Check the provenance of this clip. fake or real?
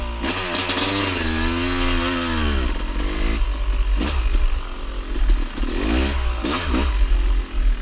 real